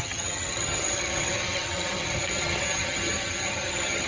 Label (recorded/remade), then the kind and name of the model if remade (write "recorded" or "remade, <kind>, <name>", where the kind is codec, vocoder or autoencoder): remade, vocoder, HiFi-GAN